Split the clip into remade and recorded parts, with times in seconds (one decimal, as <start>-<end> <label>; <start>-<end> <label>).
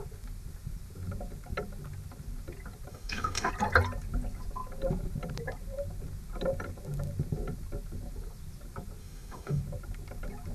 0.0-2.9 recorded; 2.9-3.5 remade; 3.5-9.0 recorded; 9.0-9.6 remade; 9.6-10.5 recorded